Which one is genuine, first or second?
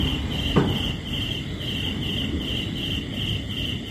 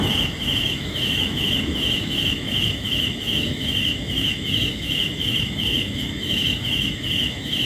first